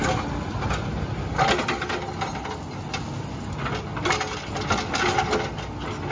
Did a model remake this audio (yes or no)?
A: no